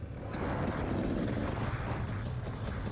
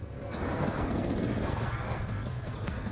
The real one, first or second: first